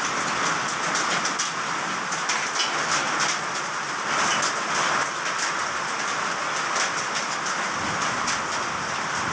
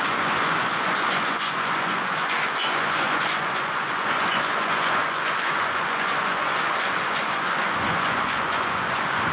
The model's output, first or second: second